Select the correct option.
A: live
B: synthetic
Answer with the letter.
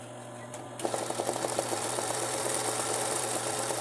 A